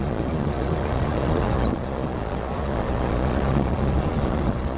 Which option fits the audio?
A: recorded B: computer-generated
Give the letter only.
B